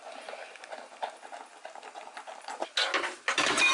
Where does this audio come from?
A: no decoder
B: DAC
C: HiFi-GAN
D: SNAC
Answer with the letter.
A